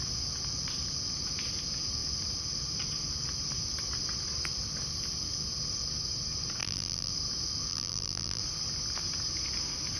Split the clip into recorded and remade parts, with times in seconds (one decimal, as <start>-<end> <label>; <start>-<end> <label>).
0.0-6.6 recorded; 6.6-7.1 remade; 7.1-7.7 recorded; 7.7-8.4 remade; 8.4-10.0 recorded